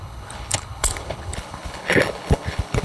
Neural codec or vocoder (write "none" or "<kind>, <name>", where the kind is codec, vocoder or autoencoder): codec, HILCodec